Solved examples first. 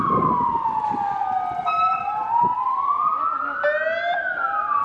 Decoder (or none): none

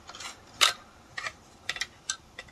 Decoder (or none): none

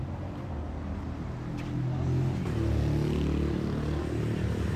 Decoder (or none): none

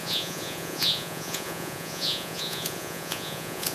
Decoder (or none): vocoder, Vocos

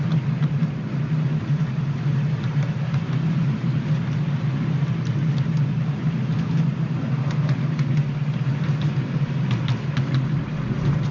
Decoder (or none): none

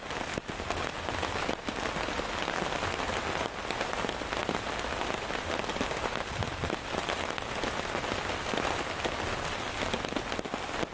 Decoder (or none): none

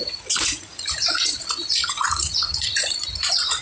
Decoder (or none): vocoder, Vocos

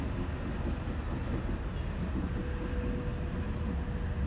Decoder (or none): none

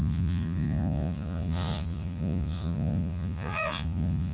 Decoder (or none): vocoder, Vocos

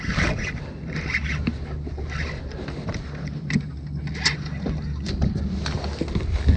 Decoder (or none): none